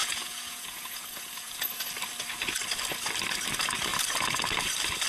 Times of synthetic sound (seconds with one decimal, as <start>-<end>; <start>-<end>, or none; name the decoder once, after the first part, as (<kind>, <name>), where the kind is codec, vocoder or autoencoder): 0.0-1.8 (vocoder, Vocos)